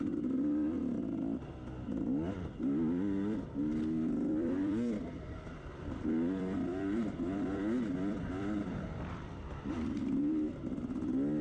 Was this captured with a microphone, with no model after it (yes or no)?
no